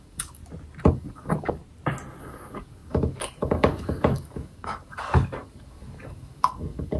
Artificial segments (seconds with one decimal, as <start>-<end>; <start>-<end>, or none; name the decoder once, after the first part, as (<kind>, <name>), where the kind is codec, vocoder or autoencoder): 0.0-0.4 (codec, DAC); 0.9-1.6; 2.2-7.0